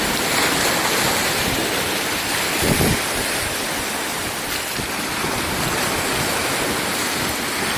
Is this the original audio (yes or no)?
yes